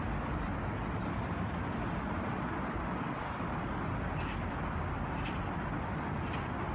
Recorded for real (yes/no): yes